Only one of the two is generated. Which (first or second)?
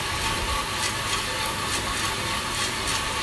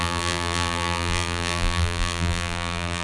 second